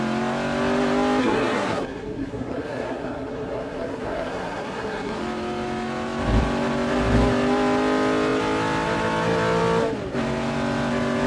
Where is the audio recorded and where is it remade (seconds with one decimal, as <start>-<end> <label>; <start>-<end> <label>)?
0.0-1.2 recorded; 1.2-5.2 remade; 5.2-11.3 recorded